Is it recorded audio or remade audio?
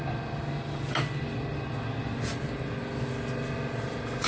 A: recorded